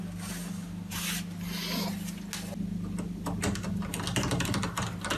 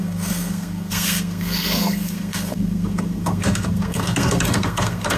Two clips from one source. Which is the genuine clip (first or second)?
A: first